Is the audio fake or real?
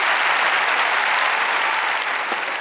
real